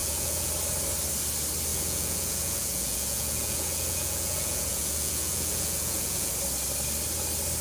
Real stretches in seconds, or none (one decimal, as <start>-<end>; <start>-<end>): 0.5-1.7; 6.3-7.6